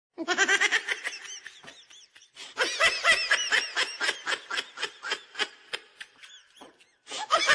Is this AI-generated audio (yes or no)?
no